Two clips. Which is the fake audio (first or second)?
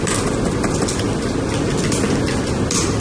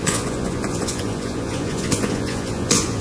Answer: second